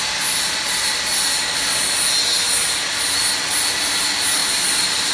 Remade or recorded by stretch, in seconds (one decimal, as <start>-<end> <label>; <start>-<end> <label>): 0.0-5.1 recorded